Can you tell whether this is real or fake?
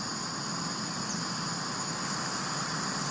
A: real